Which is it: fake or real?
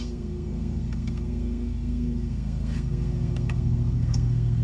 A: fake